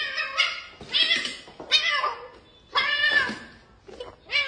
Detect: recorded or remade recorded